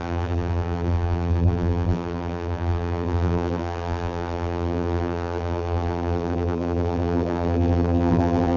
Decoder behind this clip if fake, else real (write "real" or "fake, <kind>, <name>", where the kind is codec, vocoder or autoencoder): fake, vocoder, BigVGAN v2